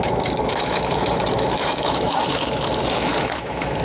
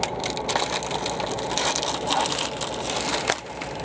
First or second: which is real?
second